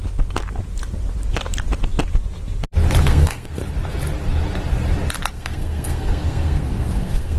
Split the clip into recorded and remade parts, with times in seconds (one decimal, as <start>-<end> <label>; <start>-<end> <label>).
0.0-3.0 recorded; 3.0-3.6 remade; 3.6-5.3 recorded; 5.3-7.4 remade